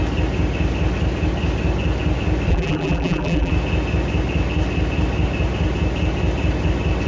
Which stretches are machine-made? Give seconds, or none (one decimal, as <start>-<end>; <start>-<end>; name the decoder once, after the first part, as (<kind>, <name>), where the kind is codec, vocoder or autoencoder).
2.5-3.5 (vocoder, BigVGAN v2)